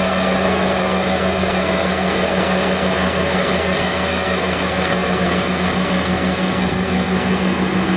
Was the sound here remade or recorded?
remade